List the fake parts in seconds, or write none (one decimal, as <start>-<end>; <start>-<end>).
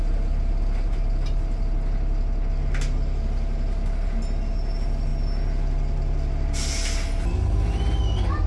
none